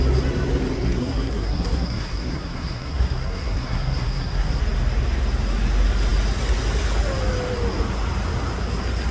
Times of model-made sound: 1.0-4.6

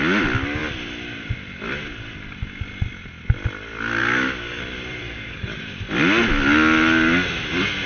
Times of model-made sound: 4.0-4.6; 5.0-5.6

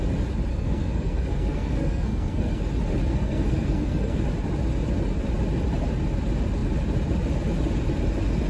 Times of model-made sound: 0.5-2.6; 3.1-4.2

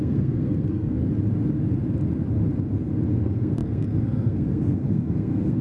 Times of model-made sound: 0.0-1.0; 3.1-5.6